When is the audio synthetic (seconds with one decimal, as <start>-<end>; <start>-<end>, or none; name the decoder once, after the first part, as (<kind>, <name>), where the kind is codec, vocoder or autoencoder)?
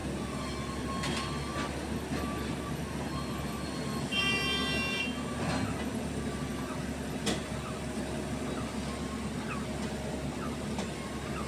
none